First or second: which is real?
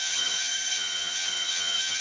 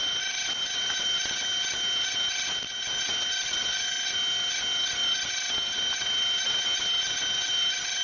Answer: second